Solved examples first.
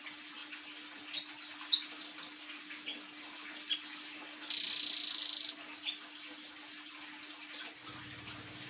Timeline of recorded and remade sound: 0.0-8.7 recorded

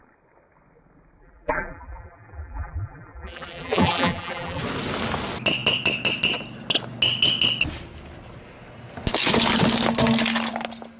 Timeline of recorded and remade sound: 0.0-1.2 recorded; 1.2-4.6 remade; 4.6-11.0 recorded

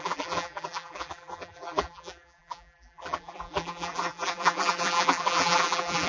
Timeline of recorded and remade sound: 0.0-6.1 remade

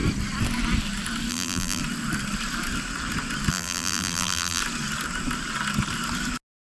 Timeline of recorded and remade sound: 0.0-1.3 recorded; 1.3-1.8 remade; 1.8-3.5 recorded; 3.5-4.6 remade; 4.6-6.7 recorded

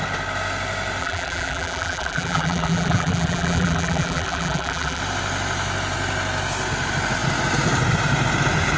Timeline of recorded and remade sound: 0.0-1.0 recorded; 1.0-5.0 remade; 5.0-8.8 recorded

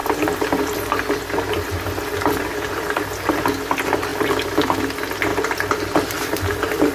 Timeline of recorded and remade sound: 0.0-3.3 remade; 3.3-4.1 recorded; 4.1-4.8 remade; 4.8-5.3 recorded; 5.3-6.9 remade

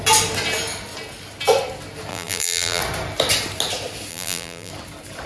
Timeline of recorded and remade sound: 0.0-2.1 recorded; 2.1-2.8 remade; 2.8-4.1 recorded; 4.1-4.7 remade; 4.7-5.3 recorded